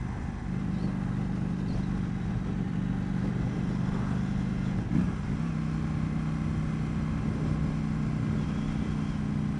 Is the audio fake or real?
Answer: real